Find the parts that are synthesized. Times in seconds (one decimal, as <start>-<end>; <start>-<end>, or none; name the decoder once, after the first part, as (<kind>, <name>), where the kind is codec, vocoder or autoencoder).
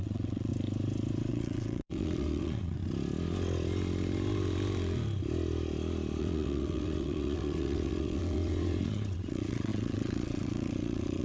0.0-0.5 (vocoder, WaveNeXt); 1.3-2.8; 6.2-11.2